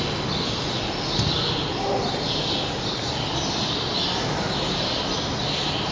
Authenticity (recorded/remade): recorded